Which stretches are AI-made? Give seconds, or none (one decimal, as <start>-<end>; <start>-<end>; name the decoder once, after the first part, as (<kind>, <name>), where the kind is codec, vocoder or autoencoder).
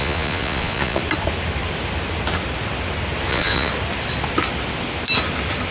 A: 0.0-1.0 (vocoder, Vocos); 3.3-3.7